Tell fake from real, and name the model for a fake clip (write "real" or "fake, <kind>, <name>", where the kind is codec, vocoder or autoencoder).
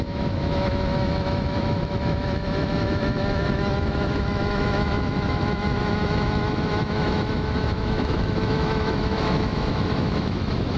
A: fake, autoencoder, DAC-VAE